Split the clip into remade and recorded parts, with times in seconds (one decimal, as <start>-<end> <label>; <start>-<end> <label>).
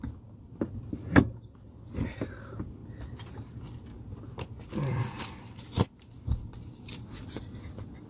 0.0-8.1 recorded